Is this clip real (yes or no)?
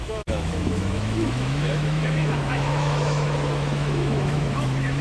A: no